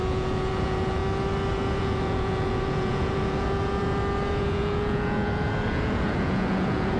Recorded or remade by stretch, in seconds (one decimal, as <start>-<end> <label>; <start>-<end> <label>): 0.0-1.0 remade; 1.0-1.8 recorded; 1.8-7.0 remade